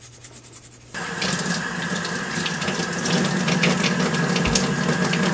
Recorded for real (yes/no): yes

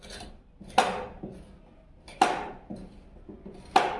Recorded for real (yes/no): yes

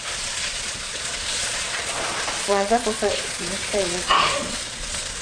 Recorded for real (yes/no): no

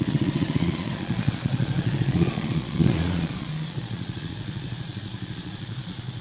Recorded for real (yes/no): no